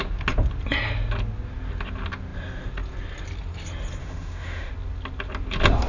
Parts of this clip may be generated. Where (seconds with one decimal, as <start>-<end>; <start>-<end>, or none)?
4.0-4.7